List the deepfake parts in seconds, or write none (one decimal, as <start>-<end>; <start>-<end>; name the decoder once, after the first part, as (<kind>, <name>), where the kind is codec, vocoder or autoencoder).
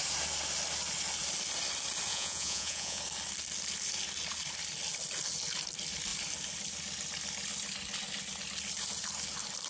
2.1-3.0 (vocoder, Vocos)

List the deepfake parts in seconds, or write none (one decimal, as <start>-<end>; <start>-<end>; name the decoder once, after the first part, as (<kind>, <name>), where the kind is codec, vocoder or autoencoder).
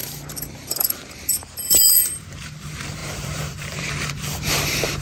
0.0-5.0 (vocoder, BigVGAN v2)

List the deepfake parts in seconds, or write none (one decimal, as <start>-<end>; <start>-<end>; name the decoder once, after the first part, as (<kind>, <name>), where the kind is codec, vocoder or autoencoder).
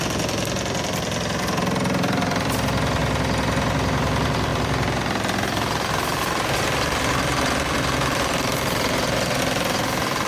0.0-3.0 (vocoder, BigVGAN v2); 3.7-10.3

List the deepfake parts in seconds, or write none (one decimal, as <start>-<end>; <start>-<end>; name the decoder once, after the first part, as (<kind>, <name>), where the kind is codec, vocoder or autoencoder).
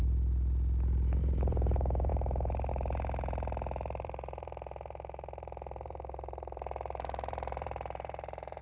1.2-8.6 (vocoder, BigVGAN v2)